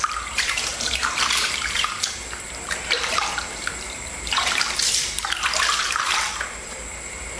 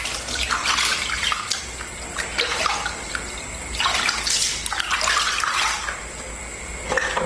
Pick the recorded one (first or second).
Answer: second